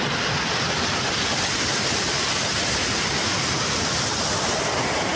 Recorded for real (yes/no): yes